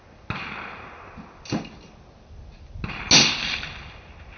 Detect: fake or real real